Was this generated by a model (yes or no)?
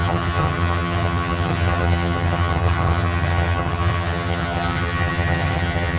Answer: yes